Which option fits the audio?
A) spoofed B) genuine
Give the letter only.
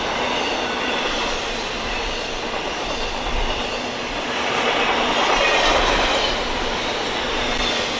B